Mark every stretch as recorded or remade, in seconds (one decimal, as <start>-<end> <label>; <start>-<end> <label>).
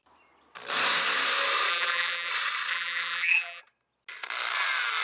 0.0-1.7 recorded; 1.7-2.3 remade; 2.3-2.7 recorded; 2.7-3.6 remade; 3.6-5.0 recorded